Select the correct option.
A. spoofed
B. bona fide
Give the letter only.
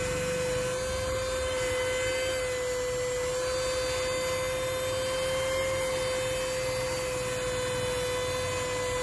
B